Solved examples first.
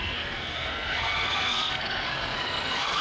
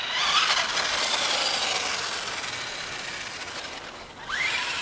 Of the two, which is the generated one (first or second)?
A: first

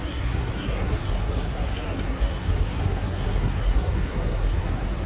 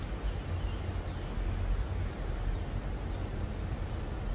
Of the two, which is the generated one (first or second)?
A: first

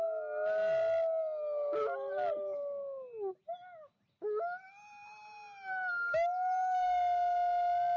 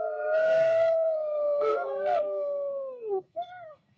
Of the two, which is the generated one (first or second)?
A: second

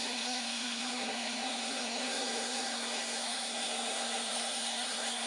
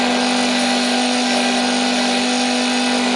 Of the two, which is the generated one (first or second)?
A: first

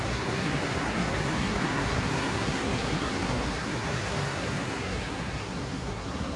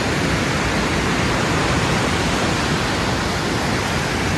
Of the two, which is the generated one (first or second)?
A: first